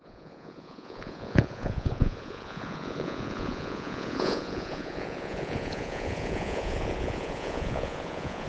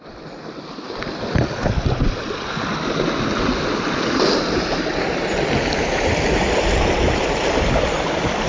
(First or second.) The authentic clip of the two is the second